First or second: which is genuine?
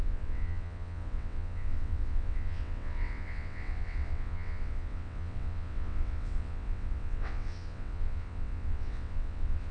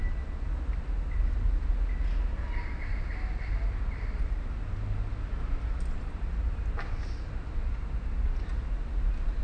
second